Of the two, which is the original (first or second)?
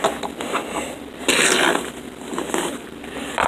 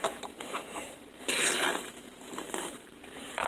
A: first